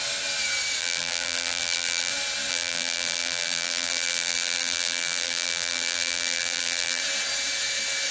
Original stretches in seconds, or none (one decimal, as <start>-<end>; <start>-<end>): 0.0-0.8; 2.1-2.5; 7.0-8.1

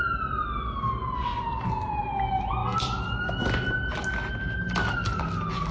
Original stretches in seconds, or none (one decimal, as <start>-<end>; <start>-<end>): 0.0-5.7

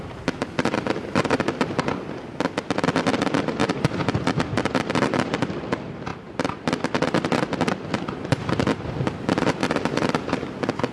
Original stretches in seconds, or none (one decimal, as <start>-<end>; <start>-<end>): 0.0-9.6; 10.3-10.9

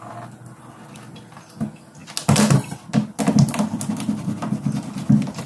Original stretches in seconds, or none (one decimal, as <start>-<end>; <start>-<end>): 0.0-5.5

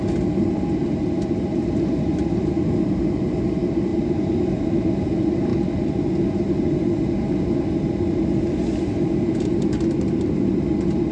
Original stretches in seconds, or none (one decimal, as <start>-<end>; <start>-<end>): 0.0-11.1

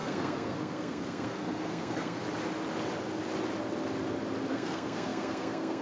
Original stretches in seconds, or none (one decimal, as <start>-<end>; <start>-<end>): 2.2-4.5

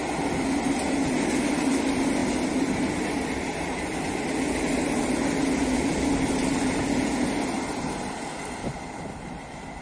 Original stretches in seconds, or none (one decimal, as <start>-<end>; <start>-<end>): 0.0-9.8

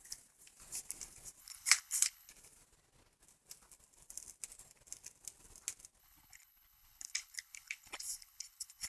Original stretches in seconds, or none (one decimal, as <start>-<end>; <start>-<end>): 0.0-1.4; 2.3-6.0